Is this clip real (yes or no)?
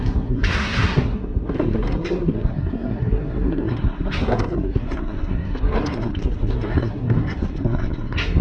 no